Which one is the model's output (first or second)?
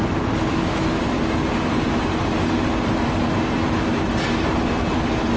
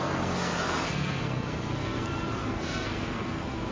second